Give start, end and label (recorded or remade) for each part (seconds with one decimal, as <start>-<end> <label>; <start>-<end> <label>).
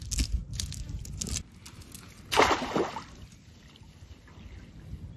0.0-5.2 recorded